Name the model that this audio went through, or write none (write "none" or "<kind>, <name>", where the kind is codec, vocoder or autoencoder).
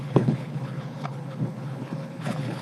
codec, HILCodec